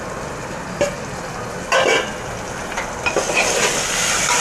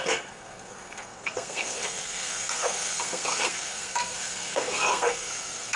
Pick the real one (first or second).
first